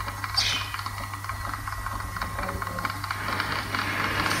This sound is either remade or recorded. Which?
recorded